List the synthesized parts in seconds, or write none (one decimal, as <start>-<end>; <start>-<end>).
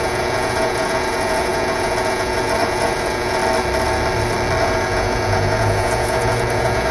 0.0-3.4; 4.6-6.9